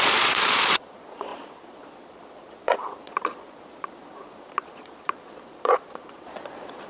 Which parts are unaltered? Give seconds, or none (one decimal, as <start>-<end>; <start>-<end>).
none